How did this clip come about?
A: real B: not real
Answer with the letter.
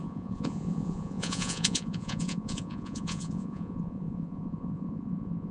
B